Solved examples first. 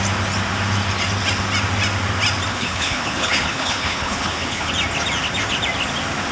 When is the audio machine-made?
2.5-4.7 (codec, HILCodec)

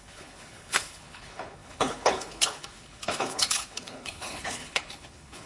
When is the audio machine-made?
0.0-5.5 (codec, HILCodec)

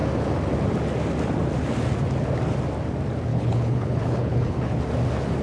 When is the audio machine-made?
3.3-4.8 (codec, HILCodec)